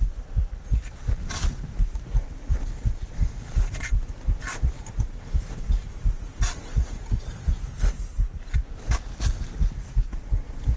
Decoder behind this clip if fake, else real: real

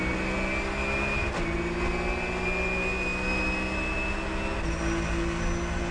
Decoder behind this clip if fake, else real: real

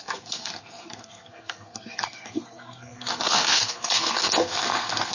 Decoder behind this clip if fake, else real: fake, codec, SNAC